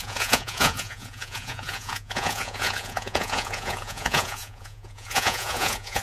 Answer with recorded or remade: remade